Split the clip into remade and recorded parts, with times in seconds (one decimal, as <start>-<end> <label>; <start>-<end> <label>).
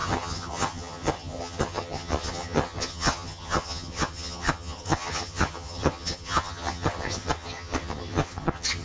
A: 0.0-8.8 remade